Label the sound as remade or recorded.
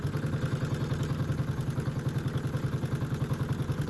recorded